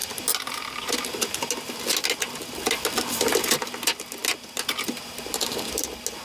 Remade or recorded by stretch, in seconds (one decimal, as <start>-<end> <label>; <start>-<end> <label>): 0.0-6.2 recorded